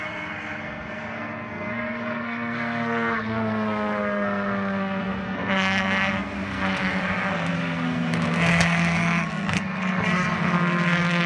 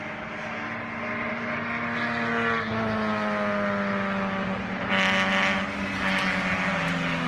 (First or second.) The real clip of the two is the second